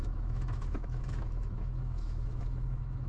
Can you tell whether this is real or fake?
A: fake